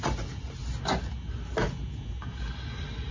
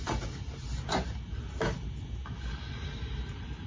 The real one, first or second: first